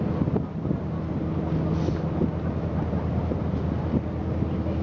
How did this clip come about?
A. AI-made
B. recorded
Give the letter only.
B